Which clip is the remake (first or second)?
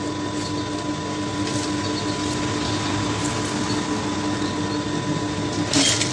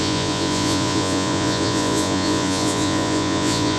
second